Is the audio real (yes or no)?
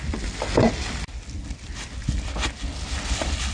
yes